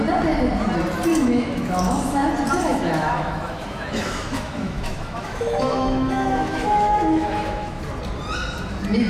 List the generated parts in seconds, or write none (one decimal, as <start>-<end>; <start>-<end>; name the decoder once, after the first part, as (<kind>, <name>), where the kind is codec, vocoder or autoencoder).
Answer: 1.1-2.3 (autoencoder, DAC-VAE); 2.7-7.8